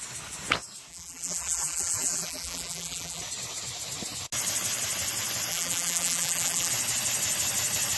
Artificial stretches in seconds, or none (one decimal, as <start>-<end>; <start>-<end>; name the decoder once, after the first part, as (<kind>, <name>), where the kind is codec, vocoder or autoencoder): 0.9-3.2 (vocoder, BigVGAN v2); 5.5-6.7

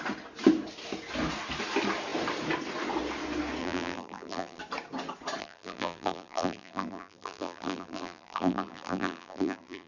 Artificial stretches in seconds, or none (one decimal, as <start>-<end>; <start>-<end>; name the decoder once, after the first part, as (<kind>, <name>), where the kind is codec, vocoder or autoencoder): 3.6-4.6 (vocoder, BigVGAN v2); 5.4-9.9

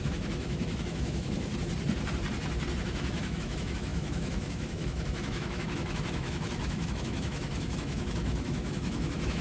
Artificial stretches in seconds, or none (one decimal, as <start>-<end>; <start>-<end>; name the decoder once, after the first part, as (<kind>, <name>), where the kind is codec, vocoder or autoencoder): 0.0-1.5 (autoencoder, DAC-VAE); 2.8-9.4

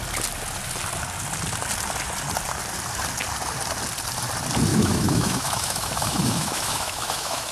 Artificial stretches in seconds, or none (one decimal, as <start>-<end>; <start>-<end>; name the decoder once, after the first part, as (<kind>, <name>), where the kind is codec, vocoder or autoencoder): 4.7-7.5 (autoencoder, DAC-VAE)

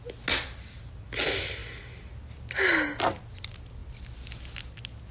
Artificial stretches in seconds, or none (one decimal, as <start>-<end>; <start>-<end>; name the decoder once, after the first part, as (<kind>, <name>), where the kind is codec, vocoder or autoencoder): none

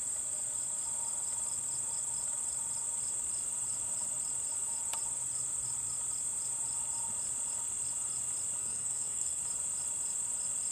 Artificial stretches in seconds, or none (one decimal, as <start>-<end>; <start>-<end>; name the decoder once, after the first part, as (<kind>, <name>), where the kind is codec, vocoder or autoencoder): 8.6-9.4 (codec, SNAC)